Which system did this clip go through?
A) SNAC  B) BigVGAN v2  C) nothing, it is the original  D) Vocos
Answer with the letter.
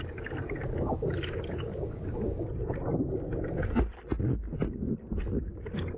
C